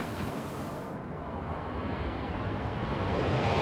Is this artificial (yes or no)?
yes